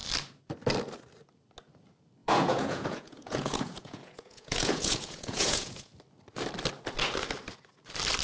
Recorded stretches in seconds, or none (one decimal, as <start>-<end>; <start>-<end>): 0.0-2.2; 5.9-8.2